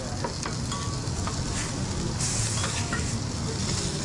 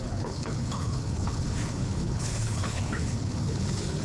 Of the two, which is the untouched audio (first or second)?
first